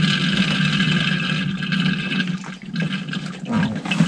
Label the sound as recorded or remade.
recorded